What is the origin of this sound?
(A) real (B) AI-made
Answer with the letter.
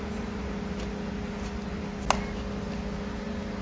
A